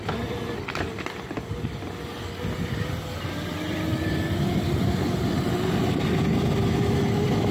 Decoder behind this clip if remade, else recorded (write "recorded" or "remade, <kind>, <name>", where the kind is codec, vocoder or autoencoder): recorded